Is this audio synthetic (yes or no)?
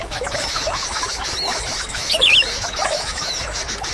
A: yes